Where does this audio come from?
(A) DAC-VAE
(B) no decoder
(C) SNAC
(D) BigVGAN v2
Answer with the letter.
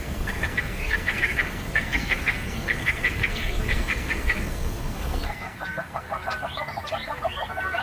C